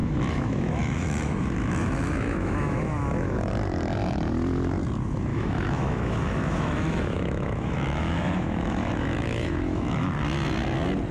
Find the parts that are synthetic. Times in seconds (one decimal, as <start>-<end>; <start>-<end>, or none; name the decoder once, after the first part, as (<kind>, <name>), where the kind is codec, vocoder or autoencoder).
0.0-3.5 (autoencoder, DAC-VAE); 5.3-10.1